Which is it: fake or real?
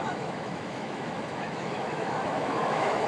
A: fake